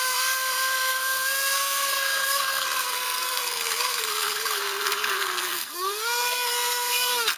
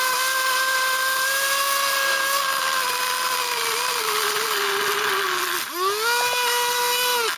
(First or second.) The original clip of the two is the second